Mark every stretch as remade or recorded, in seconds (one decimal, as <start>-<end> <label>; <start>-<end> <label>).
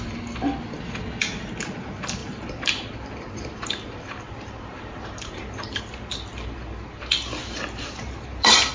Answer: 0.0-2.2 recorded; 2.2-5.8 remade; 5.8-7.4 recorded; 7.4-8.7 remade